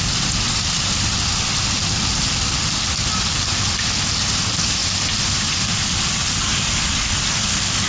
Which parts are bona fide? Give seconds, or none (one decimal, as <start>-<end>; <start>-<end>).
0.0-7.9